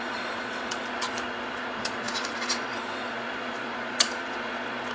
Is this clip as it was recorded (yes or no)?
no